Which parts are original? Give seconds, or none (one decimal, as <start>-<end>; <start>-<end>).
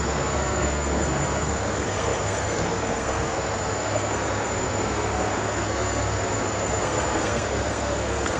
none